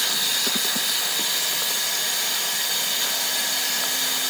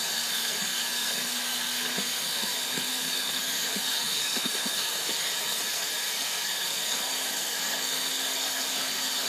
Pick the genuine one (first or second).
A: first